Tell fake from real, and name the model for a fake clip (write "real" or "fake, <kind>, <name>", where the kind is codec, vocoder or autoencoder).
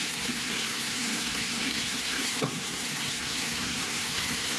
fake, codec, SNAC